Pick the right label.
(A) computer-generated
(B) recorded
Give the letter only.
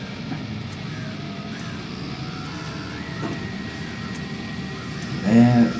B